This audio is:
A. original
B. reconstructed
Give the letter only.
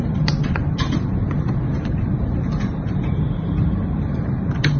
B